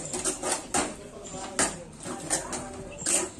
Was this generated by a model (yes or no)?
no